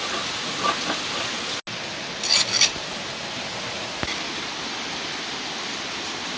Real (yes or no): yes